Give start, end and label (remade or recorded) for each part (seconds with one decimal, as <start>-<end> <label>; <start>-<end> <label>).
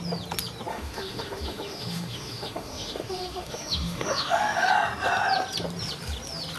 0.0-0.7 recorded; 0.7-4.7 remade; 4.7-6.6 recorded